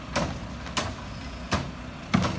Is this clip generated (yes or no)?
no